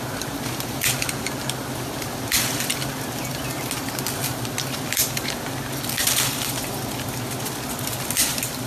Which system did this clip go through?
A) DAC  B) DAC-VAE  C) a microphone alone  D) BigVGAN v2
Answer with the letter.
C